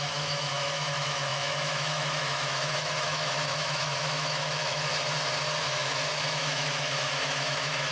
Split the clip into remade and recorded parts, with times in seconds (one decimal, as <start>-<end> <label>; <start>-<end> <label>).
0.0-4.9 remade; 4.9-5.6 recorded; 5.6-7.9 remade